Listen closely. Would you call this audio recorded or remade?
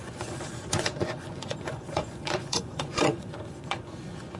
remade